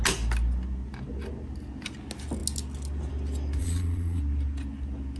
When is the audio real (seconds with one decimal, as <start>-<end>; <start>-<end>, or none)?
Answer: 0.0-3.6; 4.2-5.2